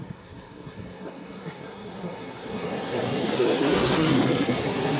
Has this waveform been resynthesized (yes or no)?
yes